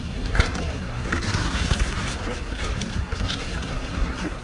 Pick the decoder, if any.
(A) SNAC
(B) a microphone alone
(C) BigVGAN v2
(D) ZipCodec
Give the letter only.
A